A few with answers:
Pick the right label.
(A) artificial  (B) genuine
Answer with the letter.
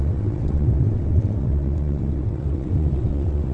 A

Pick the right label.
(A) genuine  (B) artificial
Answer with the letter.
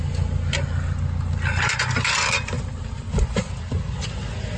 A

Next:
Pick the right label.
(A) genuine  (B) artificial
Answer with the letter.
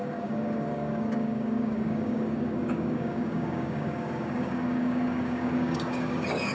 B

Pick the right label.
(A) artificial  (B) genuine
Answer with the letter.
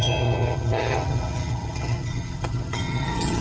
A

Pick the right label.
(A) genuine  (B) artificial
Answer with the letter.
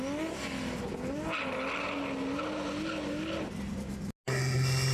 A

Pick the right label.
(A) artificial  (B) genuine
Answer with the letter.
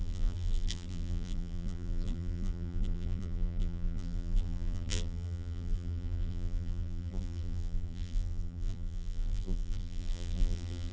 A